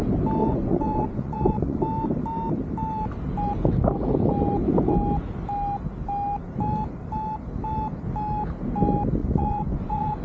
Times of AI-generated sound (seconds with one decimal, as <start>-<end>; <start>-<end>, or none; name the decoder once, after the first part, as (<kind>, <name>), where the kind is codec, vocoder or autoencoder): 0.4-1.8 (vocoder, Vocos); 9.2-10.2